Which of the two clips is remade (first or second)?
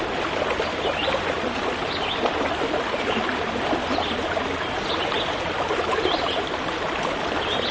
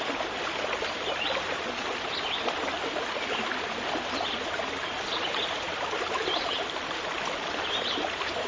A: second